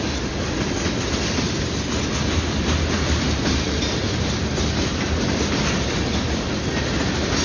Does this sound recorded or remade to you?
recorded